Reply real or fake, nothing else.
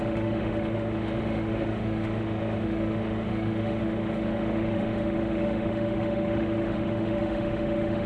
fake